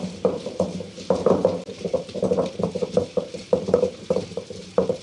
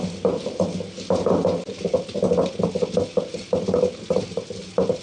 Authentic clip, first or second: second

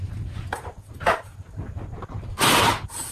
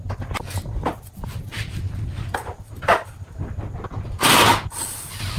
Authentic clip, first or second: second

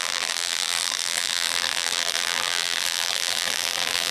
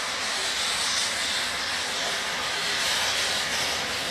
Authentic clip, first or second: second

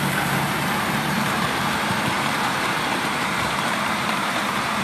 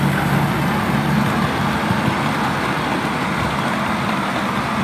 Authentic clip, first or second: second